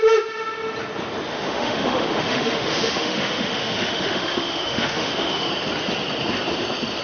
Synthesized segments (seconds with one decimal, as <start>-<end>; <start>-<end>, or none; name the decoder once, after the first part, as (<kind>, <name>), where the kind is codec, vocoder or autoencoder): 1.3-5.5 (autoencoder, DAC-VAE)